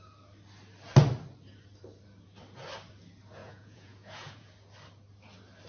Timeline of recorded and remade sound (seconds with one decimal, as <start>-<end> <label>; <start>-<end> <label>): 0.0-3.4 recorded; 3.4-4.5 remade; 4.5-5.7 recorded